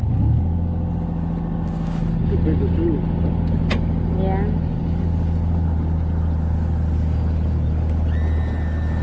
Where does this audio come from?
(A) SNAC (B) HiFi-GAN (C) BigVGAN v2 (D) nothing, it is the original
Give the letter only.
D